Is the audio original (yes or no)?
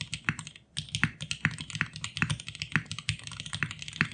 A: yes